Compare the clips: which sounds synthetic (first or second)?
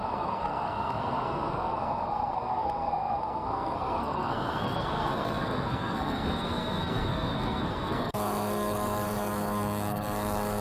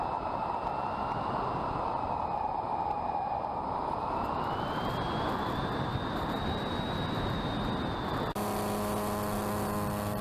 first